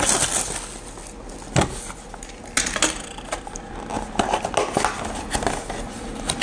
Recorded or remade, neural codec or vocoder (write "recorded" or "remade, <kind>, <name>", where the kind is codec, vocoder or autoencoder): recorded